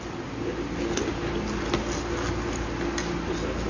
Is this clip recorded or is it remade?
recorded